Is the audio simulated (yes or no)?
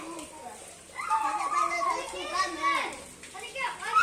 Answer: no